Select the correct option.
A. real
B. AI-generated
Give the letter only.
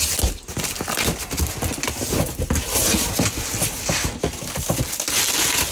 A